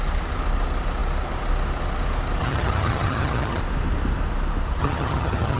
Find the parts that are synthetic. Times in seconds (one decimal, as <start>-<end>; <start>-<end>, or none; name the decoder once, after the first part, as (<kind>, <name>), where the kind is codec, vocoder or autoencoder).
2.4-3.6 (vocoder, HiFi-GAN); 4.8-5.6